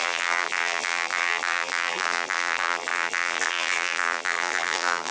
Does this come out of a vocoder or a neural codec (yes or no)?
yes